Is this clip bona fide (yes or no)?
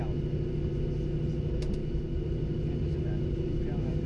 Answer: yes